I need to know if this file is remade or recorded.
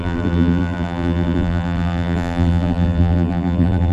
remade